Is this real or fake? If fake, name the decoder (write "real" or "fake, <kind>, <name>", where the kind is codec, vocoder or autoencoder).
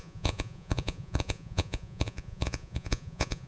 fake, vocoder, Vocos